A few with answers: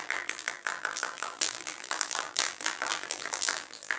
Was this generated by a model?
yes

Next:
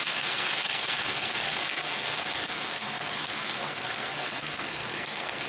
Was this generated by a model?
yes